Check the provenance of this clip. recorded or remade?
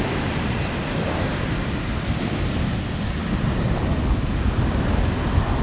recorded